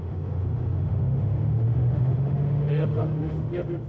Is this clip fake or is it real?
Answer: fake